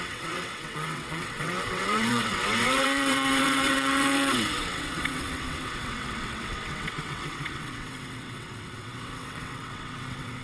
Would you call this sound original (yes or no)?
no